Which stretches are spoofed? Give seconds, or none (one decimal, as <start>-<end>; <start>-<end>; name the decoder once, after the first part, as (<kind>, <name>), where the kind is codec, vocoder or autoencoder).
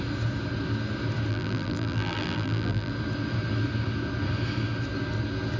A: 1.3-2.9 (vocoder, BigVGAN v2)